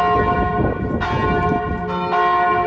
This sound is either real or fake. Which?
real